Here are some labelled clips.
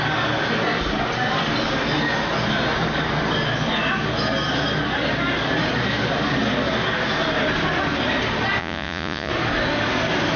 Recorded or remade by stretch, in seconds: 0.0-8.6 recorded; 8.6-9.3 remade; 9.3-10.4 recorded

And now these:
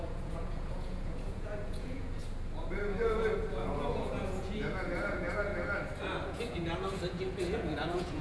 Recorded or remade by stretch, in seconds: 0.0-2.2 remade; 2.2-2.9 recorded; 2.9-5.5 remade; 5.5-6.3 recorded; 6.3-8.2 remade

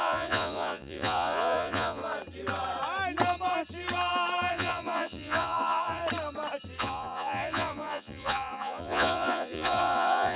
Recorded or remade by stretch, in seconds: 0.0-2.0 remade; 2.0-4.5 recorded; 4.5-6.0 remade; 6.0-6.8 recorded; 6.8-10.4 remade

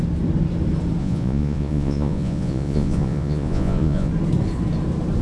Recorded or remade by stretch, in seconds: 0.0-1.0 recorded; 1.0-4.1 remade; 4.1-5.2 recorded

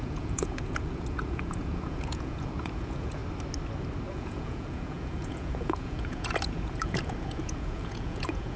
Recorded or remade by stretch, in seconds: 0.0-3.2 remade; 3.2-4.1 recorded; 4.1-8.6 remade

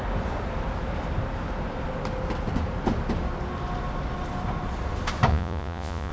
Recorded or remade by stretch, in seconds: 0.0-5.3 recorded; 5.3-6.1 remade

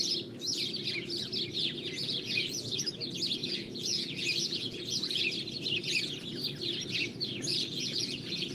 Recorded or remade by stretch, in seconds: 0.0-2.0 recorded; 2.0-2.8 remade; 2.8-3.4 recorded; 3.4-5.2 remade; 5.2-7.5 recorded; 7.5-8.5 remade

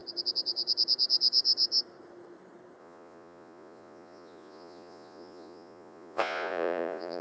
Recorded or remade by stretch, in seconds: 0.0-2.8 recorded; 2.8-7.2 remade